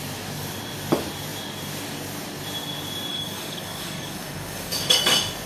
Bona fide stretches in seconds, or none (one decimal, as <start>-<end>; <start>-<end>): 0.0-3.1; 5.1-5.5